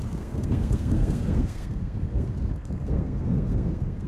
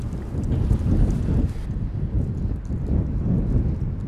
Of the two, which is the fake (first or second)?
first